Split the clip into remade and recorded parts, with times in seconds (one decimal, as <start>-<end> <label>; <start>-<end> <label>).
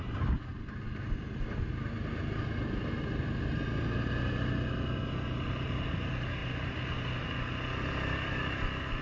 0.0-9.0 recorded